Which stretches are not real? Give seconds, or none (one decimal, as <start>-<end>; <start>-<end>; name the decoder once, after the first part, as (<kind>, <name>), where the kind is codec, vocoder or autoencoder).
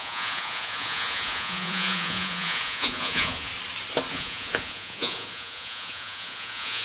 0.0-3.5 (vocoder, Vocos); 4.1-6.8